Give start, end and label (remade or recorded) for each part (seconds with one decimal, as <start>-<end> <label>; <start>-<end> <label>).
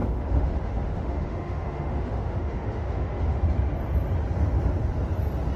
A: 0.0-3.4 remade; 3.4-5.6 recorded